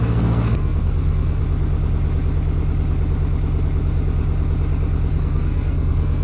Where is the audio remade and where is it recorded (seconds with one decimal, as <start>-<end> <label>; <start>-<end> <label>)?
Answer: 0.0-1.4 remade; 1.4-5.1 recorded; 5.1-6.2 remade